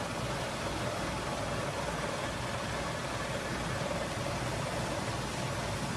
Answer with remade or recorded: recorded